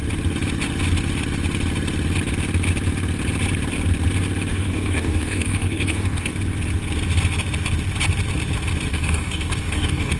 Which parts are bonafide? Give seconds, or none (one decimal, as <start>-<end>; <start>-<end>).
0.0-4.5; 6.3-8.9